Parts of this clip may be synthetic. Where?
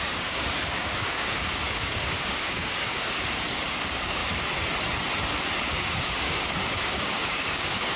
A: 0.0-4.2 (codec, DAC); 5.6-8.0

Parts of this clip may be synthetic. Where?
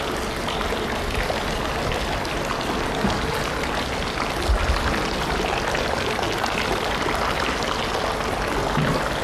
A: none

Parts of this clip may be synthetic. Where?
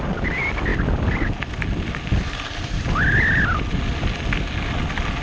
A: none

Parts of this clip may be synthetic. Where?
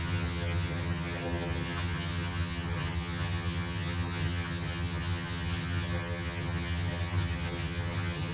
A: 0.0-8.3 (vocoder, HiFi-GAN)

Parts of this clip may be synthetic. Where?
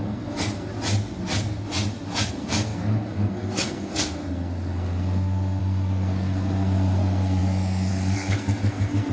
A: 0.0-0.7 (codec, SNAC); 2.3-9.1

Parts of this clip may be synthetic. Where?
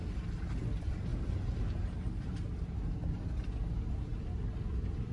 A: 1.1-3.3 (vocoder, BigVGAN v2)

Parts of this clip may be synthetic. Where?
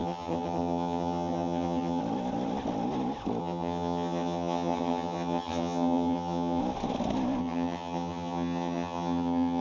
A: 0.0-2.0 (vocoder, HiFi-GAN); 3.4-6.6; 7.4-9.6